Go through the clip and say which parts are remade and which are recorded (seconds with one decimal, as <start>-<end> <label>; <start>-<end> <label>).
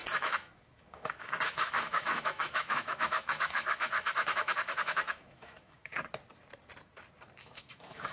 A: 0.0-5.9 remade; 5.9-7.4 recorded; 7.4-8.1 remade